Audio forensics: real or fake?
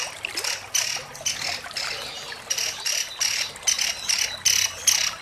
real